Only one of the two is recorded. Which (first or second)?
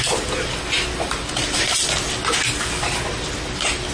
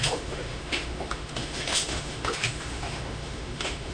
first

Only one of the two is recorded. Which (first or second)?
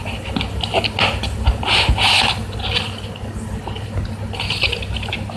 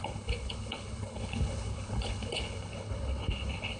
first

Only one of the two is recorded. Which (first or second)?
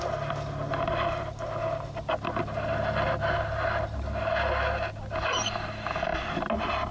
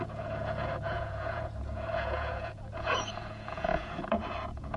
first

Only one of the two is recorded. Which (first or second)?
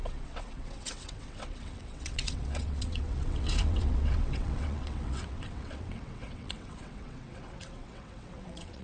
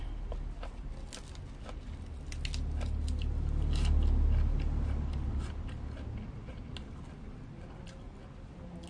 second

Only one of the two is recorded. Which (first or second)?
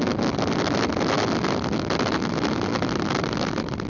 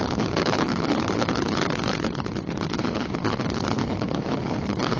first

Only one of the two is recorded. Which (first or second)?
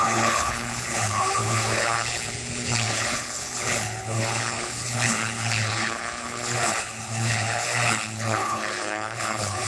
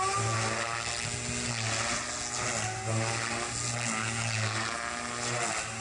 second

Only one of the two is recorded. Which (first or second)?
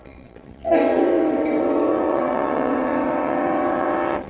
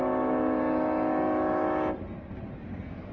second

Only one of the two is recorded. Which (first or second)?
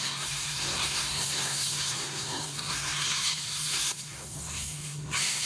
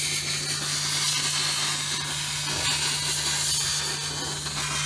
second